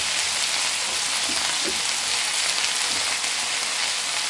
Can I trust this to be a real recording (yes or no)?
yes